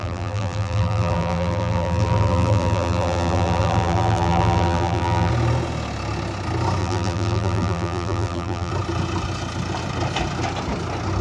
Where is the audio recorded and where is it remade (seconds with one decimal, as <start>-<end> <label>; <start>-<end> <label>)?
0.0-5.3 remade; 5.3-6.8 recorded; 6.8-8.7 remade; 8.7-11.2 recorded